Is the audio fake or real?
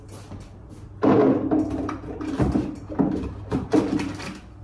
real